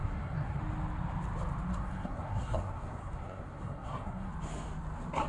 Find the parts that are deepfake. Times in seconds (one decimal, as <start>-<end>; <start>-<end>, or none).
0.0-0.6; 1.7-4.3